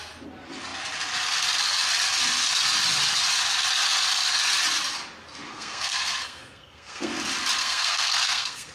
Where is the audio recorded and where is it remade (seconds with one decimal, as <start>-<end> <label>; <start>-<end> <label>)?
0.0-5.5 recorded; 5.5-7.1 remade; 7.1-7.6 recorded; 7.6-8.7 remade